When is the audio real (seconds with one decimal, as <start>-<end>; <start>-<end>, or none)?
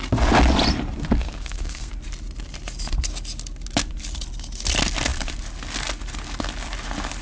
0.0-1.2; 1.9-7.2